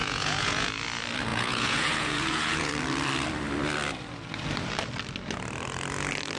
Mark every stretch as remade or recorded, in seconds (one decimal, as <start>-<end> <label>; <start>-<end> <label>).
0.0-0.7 remade; 0.7-1.3 recorded; 1.3-2.7 remade; 2.7-6.4 recorded